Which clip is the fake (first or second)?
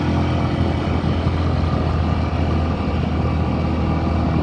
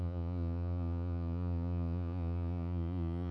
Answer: second